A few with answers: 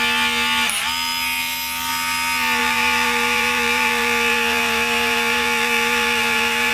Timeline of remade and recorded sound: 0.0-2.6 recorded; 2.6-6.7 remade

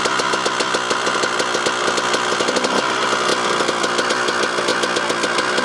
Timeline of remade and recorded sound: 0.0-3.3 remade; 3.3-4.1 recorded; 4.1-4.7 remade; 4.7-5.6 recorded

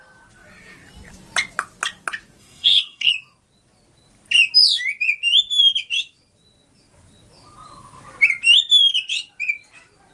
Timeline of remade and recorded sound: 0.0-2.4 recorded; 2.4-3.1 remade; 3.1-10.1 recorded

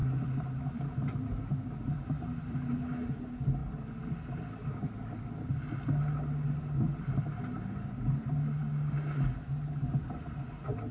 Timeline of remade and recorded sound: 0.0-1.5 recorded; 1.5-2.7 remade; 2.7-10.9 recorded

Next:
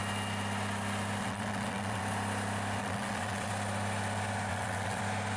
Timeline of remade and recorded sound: 0.0-1.2 recorded; 1.2-2.0 remade; 2.0-2.8 recorded; 2.8-3.5 remade; 3.5-4.5 recorded; 4.5-5.0 remade; 5.0-5.4 recorded

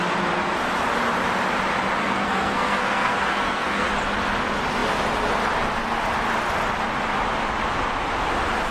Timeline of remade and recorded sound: 0.0-2.0 recorded; 2.0-3.9 remade; 3.9-8.7 recorded